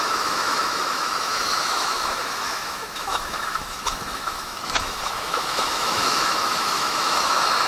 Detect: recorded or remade remade